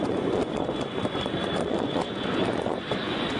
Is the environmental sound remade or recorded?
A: remade